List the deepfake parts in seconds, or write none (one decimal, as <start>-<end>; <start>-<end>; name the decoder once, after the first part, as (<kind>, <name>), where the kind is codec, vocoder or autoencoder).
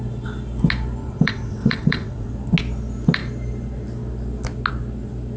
1.0-2.3 (vocoder, WaveNeXt)